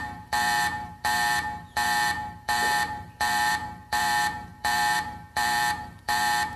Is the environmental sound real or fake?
fake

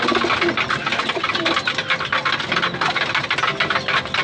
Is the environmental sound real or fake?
real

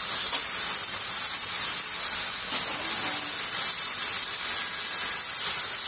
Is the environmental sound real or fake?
real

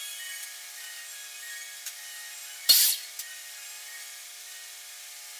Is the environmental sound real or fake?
real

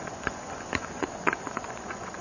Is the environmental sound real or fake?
fake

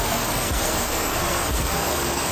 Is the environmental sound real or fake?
fake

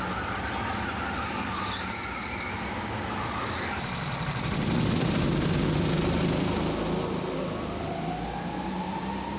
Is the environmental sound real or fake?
real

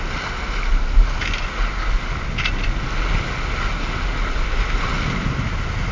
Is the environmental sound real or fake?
real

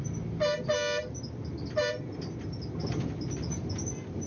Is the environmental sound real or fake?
real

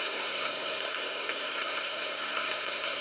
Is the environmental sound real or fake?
fake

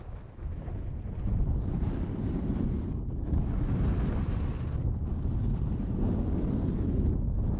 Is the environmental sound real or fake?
real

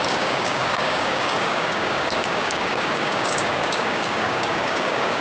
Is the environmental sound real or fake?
fake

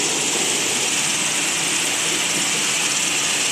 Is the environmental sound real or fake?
real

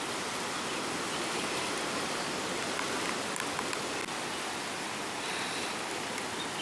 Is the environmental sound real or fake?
real